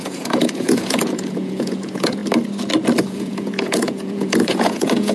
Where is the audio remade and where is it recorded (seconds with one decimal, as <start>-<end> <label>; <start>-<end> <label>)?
0.0-2.2 remade; 2.2-3.0 recorded; 3.0-5.1 remade